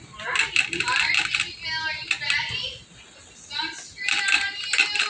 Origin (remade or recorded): recorded